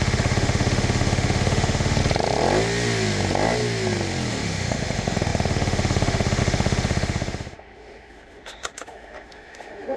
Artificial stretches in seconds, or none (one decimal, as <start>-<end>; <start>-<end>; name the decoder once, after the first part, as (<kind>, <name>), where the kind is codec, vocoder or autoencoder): 0.0-2.0 (autoencoder, DAC-VAE); 4.3-10.0